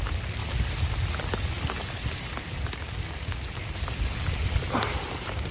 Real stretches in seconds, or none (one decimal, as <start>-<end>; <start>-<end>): 0.0-5.5